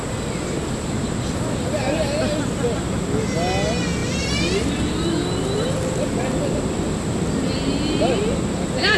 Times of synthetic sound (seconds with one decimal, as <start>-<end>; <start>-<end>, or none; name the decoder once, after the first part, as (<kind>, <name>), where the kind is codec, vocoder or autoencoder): none